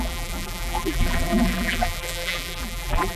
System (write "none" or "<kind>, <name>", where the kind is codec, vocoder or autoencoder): vocoder, BigVGAN v2